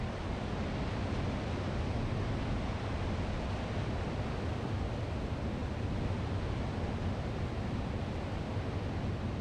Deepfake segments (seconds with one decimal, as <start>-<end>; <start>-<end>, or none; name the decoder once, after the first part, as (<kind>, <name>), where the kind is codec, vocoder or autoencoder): none